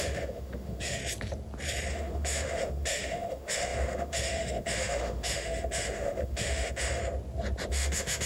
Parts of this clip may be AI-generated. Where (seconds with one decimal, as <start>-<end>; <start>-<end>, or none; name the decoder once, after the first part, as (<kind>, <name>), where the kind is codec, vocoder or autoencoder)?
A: 0.0-1.0 (autoencoder, DAC-VAE); 1.9-7.0; 7.7-8.3